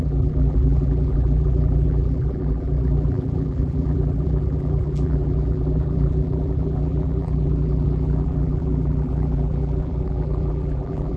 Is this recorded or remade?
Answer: remade